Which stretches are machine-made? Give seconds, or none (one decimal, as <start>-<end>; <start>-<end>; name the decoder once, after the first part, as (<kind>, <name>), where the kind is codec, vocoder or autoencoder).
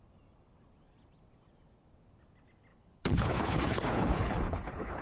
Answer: 2.7-5.0 (codec, HILCodec)